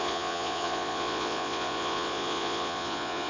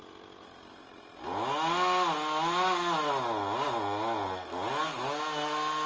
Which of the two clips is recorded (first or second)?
second